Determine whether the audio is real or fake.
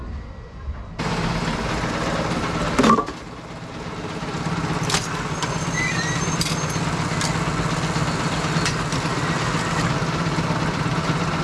real